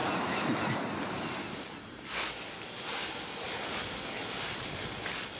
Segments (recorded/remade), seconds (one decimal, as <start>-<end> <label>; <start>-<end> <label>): 0.0-5.4 recorded